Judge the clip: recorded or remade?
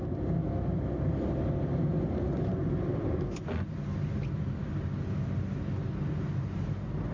recorded